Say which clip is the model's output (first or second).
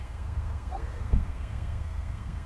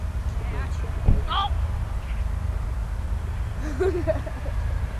first